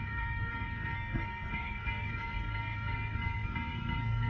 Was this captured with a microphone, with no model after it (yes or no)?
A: no